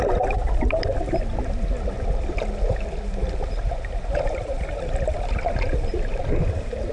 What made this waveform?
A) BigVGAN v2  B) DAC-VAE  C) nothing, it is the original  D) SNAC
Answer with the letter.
C